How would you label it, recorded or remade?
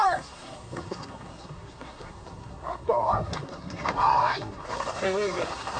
remade